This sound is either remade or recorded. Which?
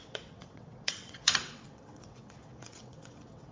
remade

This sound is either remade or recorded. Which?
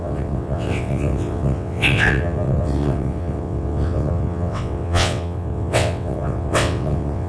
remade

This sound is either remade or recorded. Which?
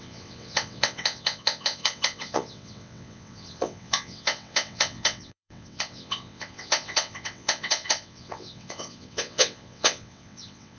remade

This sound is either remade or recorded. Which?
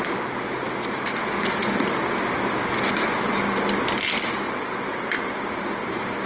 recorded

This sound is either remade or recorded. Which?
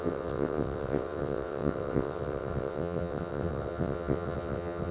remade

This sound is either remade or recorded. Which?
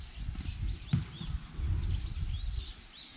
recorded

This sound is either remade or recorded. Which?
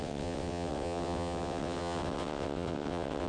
remade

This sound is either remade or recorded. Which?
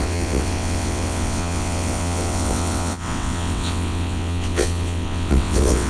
remade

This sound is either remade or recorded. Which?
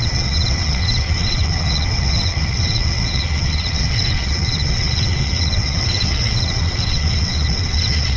remade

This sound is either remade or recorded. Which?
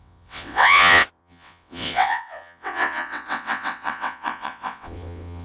remade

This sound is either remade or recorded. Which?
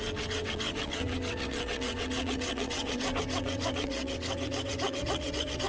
remade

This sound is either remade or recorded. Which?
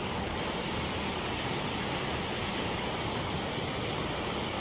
recorded